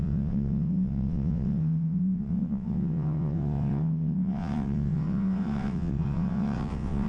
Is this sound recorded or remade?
remade